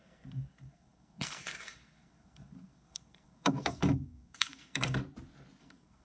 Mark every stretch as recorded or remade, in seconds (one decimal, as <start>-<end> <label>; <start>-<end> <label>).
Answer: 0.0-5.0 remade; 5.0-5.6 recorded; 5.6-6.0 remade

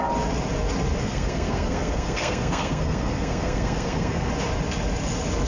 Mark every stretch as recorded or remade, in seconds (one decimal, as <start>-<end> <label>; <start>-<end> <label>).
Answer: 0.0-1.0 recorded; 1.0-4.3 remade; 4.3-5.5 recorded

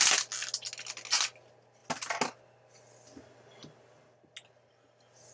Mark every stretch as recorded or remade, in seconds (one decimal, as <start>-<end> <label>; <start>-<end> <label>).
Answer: 0.0-5.3 recorded

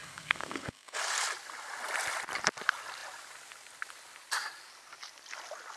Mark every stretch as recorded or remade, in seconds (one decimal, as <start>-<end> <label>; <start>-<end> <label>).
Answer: 0.0-1.0 remade; 1.0-5.8 recorded

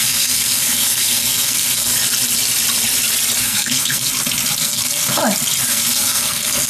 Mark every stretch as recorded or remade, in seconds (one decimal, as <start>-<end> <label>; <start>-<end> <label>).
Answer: 0.0-1.9 remade; 1.9-3.4 recorded; 3.4-4.1 remade; 4.1-4.6 recorded; 4.6-5.2 remade; 5.2-5.7 recorded; 5.7-6.7 remade

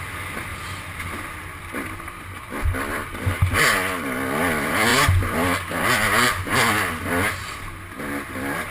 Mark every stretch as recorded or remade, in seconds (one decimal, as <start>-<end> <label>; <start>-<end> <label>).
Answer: 0.0-8.7 recorded

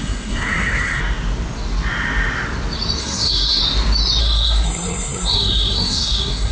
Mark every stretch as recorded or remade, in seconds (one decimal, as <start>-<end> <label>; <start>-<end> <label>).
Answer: 0.0-1.0 remade; 1.0-3.0 recorded; 3.0-3.6 remade; 3.6-4.2 recorded; 4.2-6.5 remade